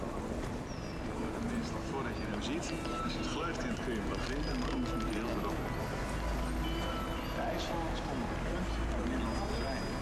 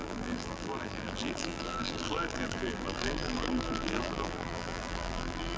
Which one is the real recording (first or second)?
first